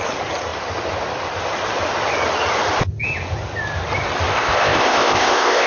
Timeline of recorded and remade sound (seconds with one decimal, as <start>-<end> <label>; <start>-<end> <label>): 0.0-4.3 recorded; 4.3-5.7 remade

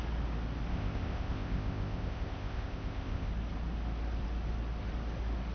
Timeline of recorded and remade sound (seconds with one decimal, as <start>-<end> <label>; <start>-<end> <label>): 0.0-0.7 recorded; 0.7-3.3 remade; 3.3-5.5 recorded

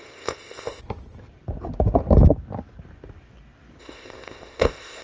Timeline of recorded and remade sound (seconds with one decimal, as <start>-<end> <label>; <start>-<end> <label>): 0.0-0.8 remade; 0.8-3.8 recorded; 3.8-5.0 remade

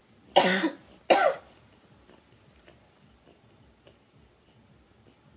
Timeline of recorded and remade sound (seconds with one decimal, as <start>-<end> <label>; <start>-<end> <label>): 0.0-5.4 recorded

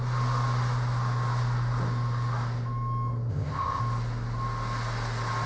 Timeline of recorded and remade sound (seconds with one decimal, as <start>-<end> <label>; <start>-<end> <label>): 0.0-3.3 recorded; 3.3-3.8 remade; 3.8-5.5 recorded